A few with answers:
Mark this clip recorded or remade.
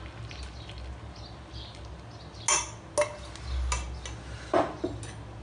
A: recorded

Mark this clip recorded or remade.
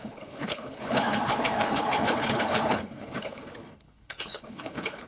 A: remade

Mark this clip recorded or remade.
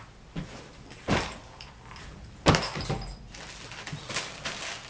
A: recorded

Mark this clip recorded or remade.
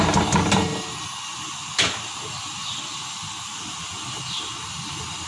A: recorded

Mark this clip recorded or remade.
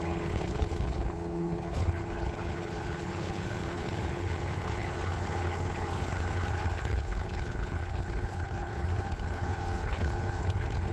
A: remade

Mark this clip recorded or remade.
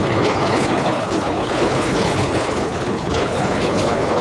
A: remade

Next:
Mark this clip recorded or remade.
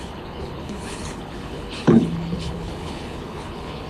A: remade